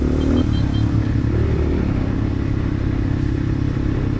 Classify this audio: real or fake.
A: real